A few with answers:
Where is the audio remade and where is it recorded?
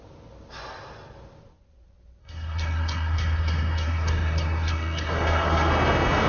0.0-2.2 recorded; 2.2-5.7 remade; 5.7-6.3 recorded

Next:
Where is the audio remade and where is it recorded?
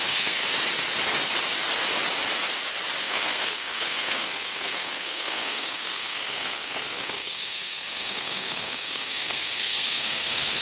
0.0-0.4 remade; 0.4-3.0 recorded; 3.0-10.6 remade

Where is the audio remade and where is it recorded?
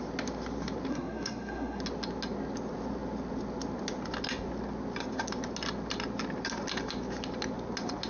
0.0-0.9 recorded; 0.9-1.8 remade; 1.8-8.1 recorded